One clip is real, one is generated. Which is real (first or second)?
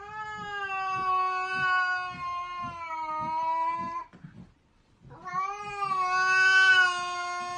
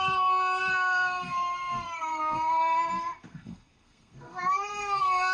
first